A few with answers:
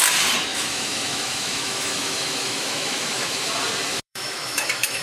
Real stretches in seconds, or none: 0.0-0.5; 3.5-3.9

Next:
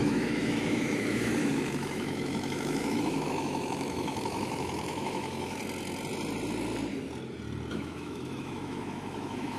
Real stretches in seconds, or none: 5.6-7.7

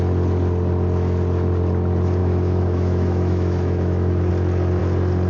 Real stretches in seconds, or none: 0.0-2.2; 4.3-5.3

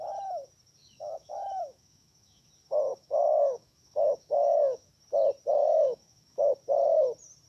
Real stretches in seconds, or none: 0.0-0.8; 2.5-2.9; 4.9-5.6; 6.5-7.5

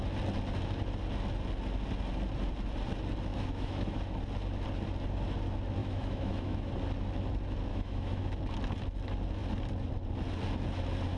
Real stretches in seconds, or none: 0.0-3.3; 4.0-5.8; 6.7-7.7; 8.3-11.2

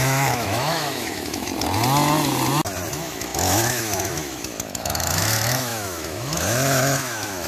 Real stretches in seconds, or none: 1.5-2.9

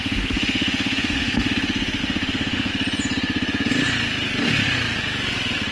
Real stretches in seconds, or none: 1.5-2.0; 2.7-5.7